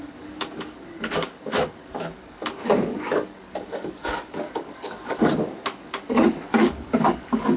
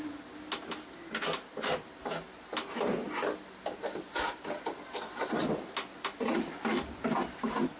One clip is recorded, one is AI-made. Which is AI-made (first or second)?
first